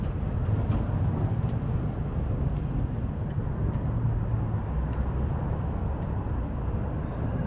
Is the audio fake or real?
real